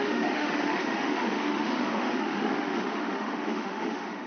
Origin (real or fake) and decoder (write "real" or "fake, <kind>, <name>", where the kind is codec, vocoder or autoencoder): fake, autoencoder, DAC-VAE